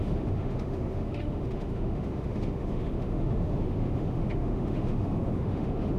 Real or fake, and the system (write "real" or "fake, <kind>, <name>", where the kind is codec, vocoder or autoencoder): fake, autoencoder, DAC-VAE